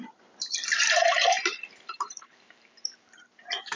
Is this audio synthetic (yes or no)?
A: yes